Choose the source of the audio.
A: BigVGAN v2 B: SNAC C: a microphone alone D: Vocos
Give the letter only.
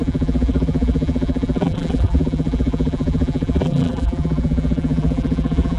A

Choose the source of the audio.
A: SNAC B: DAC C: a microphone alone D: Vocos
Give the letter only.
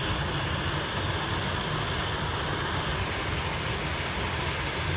C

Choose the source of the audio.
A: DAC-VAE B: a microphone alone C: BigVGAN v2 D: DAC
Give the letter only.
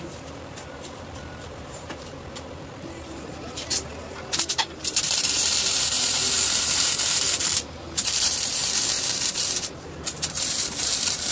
C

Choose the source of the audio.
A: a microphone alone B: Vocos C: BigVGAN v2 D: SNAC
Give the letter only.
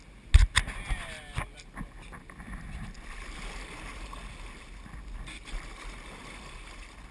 A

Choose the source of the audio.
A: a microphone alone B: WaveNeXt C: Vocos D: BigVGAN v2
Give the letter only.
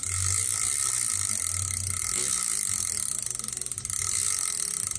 A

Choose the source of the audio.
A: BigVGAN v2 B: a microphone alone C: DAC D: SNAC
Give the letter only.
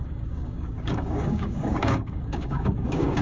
C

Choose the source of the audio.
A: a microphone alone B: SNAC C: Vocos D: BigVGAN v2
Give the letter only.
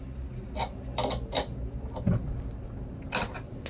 A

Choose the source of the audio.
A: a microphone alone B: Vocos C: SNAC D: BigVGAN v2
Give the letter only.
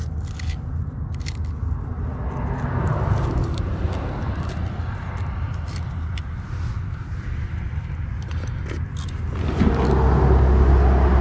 A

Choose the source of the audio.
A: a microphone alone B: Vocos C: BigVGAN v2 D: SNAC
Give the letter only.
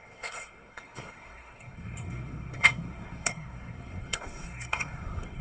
D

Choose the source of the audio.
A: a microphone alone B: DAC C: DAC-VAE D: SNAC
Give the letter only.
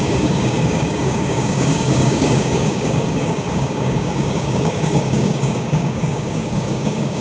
B